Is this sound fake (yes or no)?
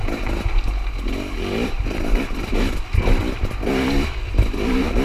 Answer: no